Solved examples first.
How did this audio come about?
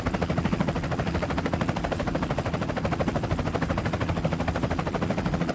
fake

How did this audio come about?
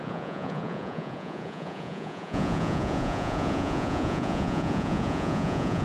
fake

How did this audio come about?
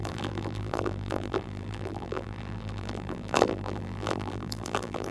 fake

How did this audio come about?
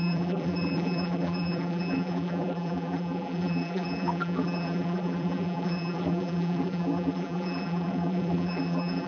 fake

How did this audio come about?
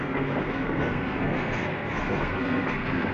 fake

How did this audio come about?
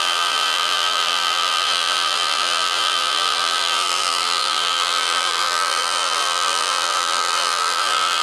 fake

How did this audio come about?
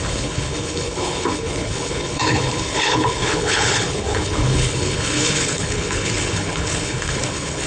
fake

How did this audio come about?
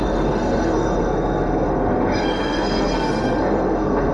fake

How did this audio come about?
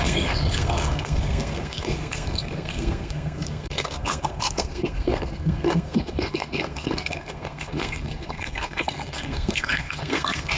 fake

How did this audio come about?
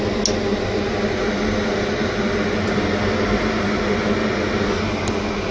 real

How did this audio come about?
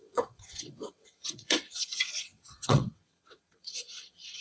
fake